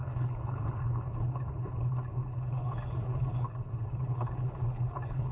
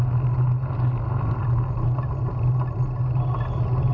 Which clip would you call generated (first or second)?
first